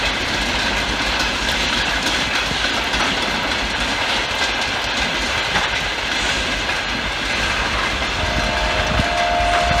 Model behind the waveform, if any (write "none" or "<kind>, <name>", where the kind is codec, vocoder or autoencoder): none